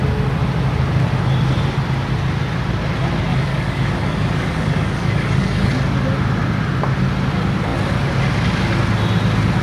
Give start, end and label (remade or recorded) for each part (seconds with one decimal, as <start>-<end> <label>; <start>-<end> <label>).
0.0-3.3 recorded; 3.3-5.7 remade; 5.7-9.6 recorded